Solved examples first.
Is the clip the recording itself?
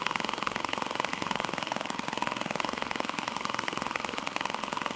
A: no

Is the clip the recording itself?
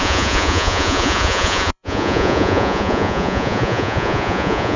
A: no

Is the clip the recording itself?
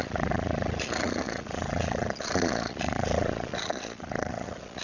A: no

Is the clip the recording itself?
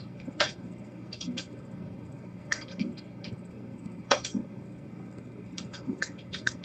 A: no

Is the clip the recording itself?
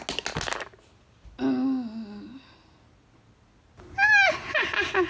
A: yes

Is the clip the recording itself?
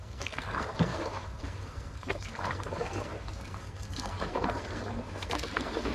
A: no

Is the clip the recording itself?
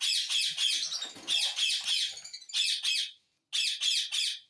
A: yes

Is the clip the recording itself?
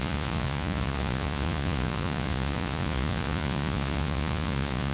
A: no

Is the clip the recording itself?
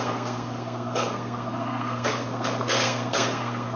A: no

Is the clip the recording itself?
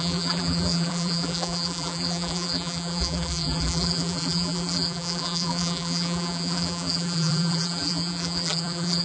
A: no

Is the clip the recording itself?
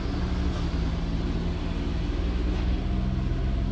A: yes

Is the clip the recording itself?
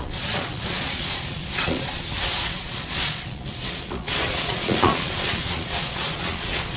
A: no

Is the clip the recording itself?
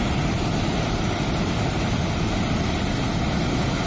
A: yes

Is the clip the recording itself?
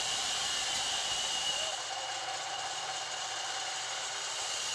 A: no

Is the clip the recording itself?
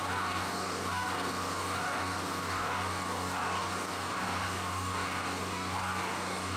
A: no